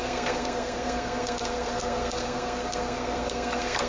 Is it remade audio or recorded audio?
remade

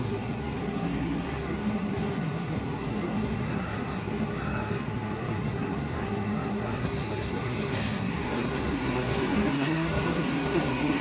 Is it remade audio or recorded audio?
remade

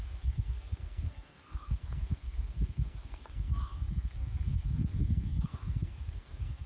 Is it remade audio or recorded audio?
remade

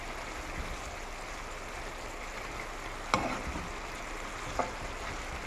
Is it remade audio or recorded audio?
recorded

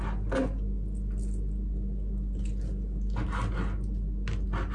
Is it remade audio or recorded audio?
recorded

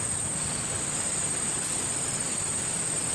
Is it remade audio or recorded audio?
recorded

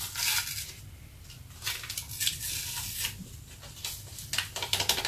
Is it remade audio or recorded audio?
recorded